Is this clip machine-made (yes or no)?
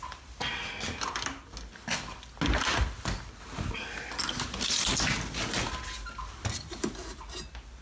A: no